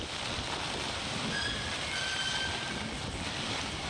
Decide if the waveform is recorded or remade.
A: recorded